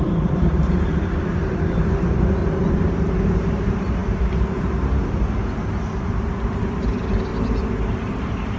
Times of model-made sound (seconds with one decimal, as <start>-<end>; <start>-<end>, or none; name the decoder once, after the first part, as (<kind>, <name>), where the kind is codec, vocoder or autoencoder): 0.0-2.4 (vocoder, BigVGAN v2); 3.1-7.3; 8.1-8.6